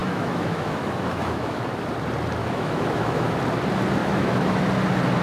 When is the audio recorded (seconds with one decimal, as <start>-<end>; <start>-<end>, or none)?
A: 1.7-2.4; 3.4-4.0; 4.7-5.2